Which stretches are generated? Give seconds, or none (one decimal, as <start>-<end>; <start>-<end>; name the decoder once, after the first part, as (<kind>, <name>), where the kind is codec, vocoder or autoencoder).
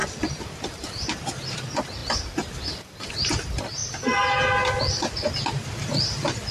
none